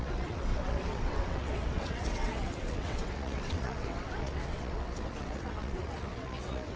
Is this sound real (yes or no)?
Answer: no